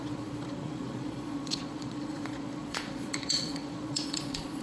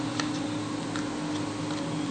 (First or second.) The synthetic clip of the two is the first